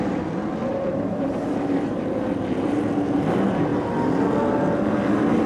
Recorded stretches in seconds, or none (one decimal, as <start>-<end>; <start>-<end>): 0.0-0.7; 2.0-5.5